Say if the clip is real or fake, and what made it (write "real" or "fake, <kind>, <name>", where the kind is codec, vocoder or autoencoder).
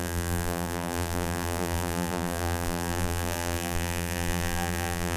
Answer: fake, vocoder, BigVGAN v2